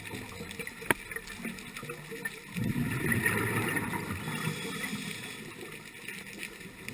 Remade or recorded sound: recorded